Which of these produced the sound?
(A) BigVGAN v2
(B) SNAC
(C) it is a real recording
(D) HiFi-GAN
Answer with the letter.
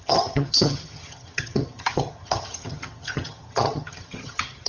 D